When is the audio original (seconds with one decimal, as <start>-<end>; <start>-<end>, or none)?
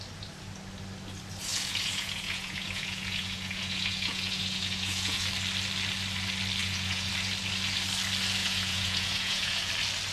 0.0-1.5; 5.3-6.6; 7.1-8.4; 9.7-10.1